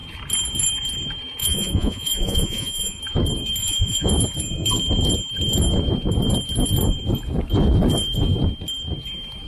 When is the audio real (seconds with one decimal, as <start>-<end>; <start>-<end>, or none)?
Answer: 0.0-1.4; 3.0-3.6; 4.1-9.5